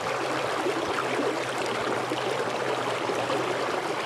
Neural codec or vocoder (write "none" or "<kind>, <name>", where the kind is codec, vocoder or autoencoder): vocoder, BigVGAN v2